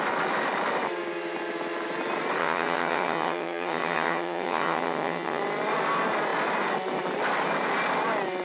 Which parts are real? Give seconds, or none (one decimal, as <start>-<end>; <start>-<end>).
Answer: 0.0-2.4; 5.4-8.4

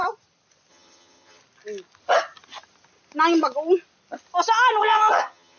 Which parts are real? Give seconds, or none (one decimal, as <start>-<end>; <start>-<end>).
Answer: 0.0-0.7; 1.4-4.8

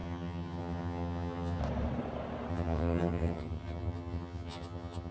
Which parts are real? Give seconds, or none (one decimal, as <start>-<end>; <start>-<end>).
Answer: 1.6-2.5

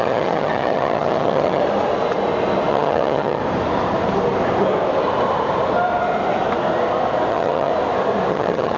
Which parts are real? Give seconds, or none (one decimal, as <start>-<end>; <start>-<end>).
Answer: 1.6-2.7; 3.4-7.3; 7.7-8.3

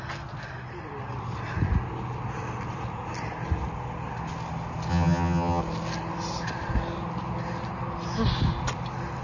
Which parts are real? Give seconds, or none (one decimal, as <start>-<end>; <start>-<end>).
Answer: 0.0-4.9; 5.6-9.2